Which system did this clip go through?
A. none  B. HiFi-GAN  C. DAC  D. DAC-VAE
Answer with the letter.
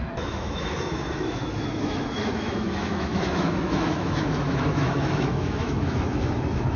D